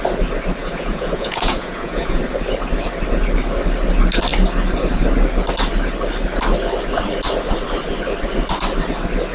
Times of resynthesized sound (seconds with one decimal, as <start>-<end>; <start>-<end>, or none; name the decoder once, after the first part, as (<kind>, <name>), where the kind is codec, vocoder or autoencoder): 0.6-2.2 (vocoder, Vocos)